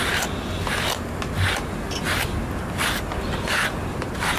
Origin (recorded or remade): recorded